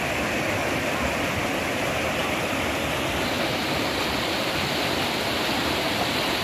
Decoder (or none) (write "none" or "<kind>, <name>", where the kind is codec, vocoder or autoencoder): none